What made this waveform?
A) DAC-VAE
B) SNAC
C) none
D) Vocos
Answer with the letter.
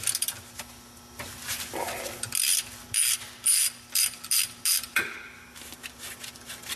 C